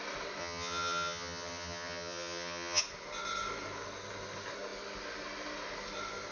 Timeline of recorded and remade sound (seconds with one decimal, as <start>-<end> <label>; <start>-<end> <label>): 0.0-0.4 recorded; 0.4-2.8 remade; 2.8-6.3 recorded